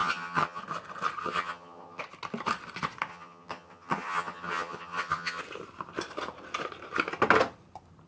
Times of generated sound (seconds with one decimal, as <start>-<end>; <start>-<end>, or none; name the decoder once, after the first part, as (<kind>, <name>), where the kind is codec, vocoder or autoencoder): 0.0-0.6 (vocoder, HiFi-GAN); 1.2-2.0; 3.1-5.4